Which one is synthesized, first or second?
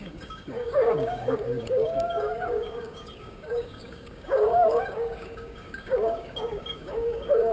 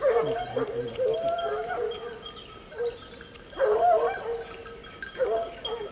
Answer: first